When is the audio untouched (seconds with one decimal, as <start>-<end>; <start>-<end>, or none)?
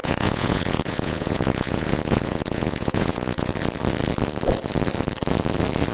3.5-5.9